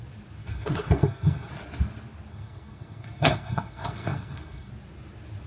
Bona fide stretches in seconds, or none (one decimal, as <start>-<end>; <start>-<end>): 0.0-0.4; 1.5-2.3; 4.7-5.5